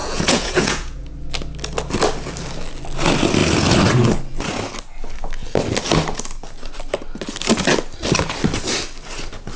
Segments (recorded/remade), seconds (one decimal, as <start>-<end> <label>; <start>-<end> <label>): 0.0-1.1 remade; 1.1-9.6 recorded